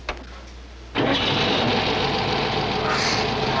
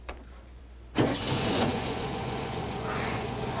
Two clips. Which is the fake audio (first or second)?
second